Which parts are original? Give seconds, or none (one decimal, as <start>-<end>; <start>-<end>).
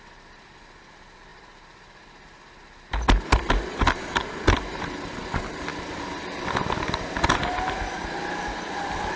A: 0.0-9.2